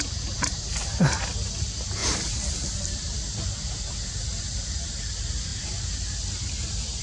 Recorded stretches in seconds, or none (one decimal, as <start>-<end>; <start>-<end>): 0.0-7.0